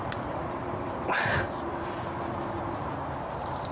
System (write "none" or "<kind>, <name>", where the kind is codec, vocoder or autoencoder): none